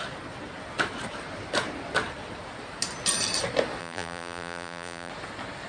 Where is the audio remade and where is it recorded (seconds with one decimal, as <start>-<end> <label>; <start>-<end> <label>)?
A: 0.0-3.8 recorded; 3.8-5.1 remade; 5.1-5.7 recorded